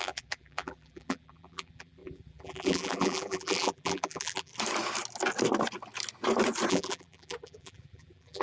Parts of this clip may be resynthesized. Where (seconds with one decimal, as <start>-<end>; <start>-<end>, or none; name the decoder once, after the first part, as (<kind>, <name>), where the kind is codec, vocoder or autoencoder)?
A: 0.0-4.5 (vocoder, BigVGAN v2); 6.7-8.4